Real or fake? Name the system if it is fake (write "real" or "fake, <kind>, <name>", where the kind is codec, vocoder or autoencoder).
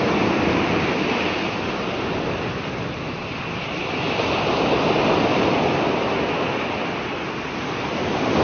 real